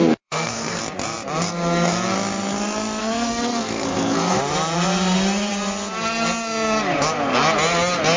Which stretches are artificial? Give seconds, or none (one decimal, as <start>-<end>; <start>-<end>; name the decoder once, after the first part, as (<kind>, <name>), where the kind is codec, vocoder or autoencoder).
0.0-0.8 (codec, SNAC); 3.0-4.4